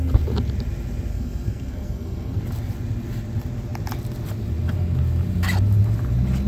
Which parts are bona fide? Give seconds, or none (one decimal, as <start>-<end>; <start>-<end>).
0.0-1.1; 2.4-6.5